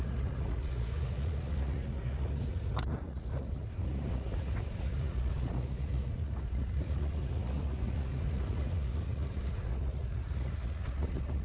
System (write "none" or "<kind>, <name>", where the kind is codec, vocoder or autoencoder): vocoder, Vocos